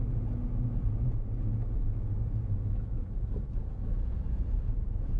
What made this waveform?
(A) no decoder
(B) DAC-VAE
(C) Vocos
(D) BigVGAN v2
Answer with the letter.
C